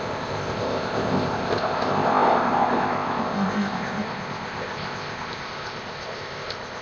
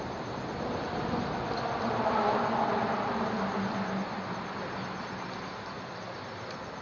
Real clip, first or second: second